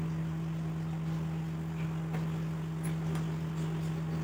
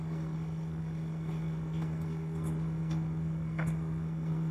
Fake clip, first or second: second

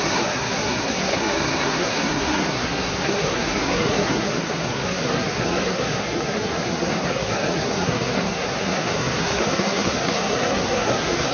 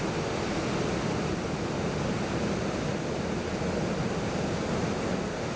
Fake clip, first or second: first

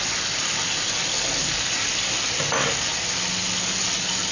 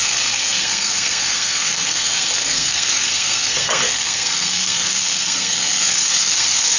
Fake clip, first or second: second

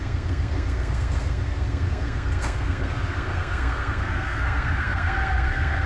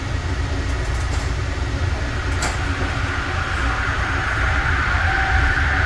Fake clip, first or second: first